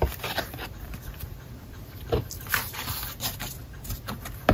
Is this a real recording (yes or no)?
no